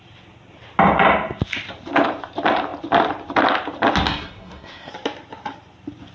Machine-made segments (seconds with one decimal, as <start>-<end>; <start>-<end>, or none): 4.1-4.9